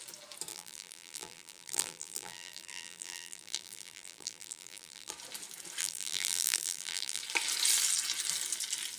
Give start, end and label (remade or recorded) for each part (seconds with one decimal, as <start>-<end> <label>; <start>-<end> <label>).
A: 0.0-0.5 recorded; 0.5-5.1 remade; 5.1-5.8 recorded; 5.8-7.2 remade; 7.2-9.0 recorded